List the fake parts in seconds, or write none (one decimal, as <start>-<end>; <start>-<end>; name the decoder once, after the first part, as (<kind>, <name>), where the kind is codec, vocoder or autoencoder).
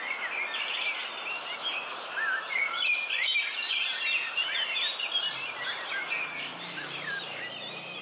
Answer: 0.0-8.0 (vocoder, BigVGAN v2)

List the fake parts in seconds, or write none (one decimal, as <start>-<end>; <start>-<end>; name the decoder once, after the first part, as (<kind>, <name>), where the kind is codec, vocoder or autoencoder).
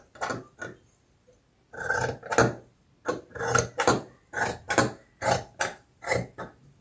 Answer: none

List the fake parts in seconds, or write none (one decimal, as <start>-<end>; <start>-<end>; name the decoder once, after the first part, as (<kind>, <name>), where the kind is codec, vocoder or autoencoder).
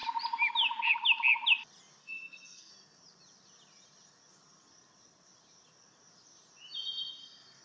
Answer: 2.0-2.7 (codec, SNAC)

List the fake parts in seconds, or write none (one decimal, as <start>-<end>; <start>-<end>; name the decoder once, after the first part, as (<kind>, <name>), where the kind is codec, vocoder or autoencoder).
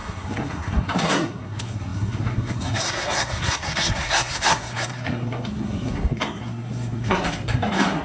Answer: 0.0-8.0 (codec, SNAC)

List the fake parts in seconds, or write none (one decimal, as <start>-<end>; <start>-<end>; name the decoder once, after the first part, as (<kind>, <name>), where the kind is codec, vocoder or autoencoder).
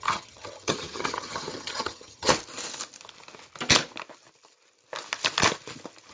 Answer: 0.0-2.3 (vocoder, HiFi-GAN)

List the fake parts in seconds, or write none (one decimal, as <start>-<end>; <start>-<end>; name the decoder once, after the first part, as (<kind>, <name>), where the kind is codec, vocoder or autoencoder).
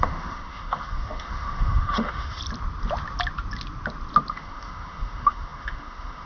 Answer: 0.0-2.4 (autoencoder, DAC-VAE); 4.3-6.3